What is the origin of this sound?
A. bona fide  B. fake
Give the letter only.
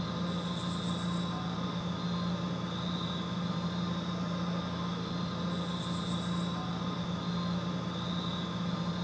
A